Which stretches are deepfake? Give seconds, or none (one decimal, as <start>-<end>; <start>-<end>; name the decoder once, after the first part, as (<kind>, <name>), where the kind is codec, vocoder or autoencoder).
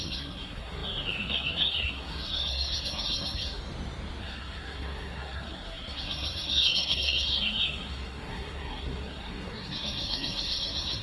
0.0-3.6 (codec, SNAC); 4.2-11.0